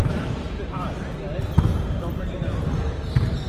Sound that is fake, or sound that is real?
real